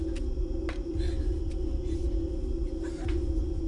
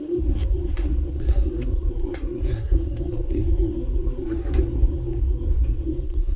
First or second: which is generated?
second